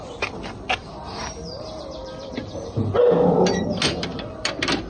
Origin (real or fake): real